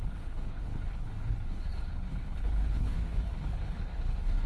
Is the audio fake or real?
fake